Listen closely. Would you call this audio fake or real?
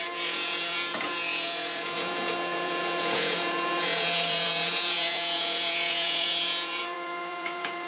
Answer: fake